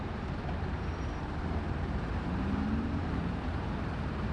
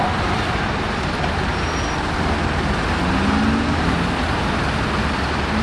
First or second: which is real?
second